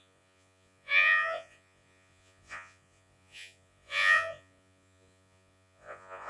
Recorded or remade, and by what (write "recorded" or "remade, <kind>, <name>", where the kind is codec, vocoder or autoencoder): remade, vocoder, Vocos